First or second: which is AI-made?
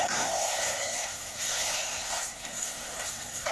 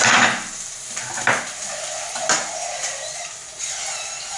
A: first